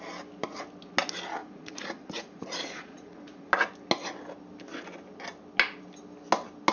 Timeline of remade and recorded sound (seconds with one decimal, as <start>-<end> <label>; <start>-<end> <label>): 0.0-1.4 recorded; 1.4-3.5 remade; 3.5-6.7 recorded